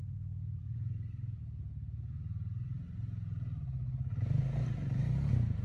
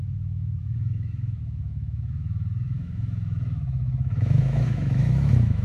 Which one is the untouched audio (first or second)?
first